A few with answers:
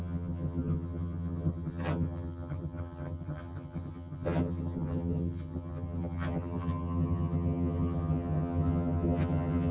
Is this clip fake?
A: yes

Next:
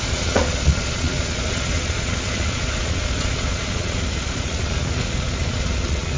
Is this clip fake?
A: yes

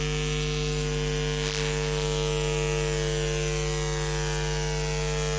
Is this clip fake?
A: no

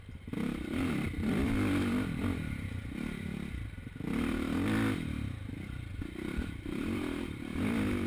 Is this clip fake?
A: yes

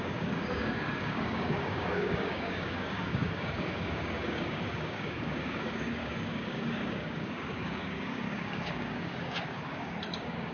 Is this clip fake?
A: yes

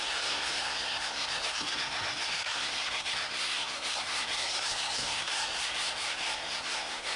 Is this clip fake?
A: yes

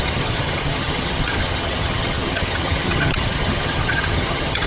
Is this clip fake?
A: yes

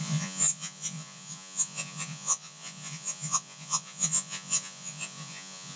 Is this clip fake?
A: yes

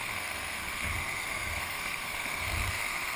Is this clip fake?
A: yes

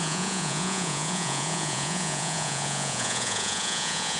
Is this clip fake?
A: yes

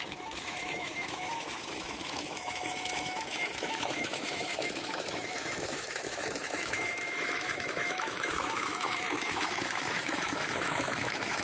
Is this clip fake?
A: yes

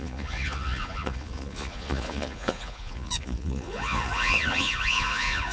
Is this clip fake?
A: yes